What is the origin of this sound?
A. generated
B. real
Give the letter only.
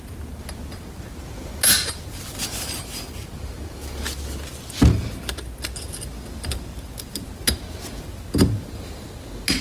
B